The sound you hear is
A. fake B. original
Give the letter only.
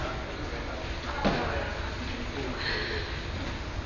B